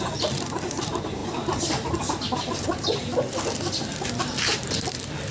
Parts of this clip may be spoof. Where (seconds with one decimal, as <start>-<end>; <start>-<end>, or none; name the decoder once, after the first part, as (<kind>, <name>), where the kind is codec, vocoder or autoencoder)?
0.0-3.1 (vocoder, BigVGAN v2); 3.9-5.3

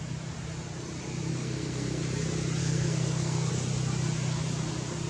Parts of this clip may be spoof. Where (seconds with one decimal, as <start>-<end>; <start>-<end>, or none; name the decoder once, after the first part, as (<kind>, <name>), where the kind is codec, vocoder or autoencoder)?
1.3-2.0 (codec, SNAC); 2.6-3.5